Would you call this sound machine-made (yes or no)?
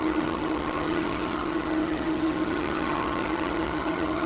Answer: yes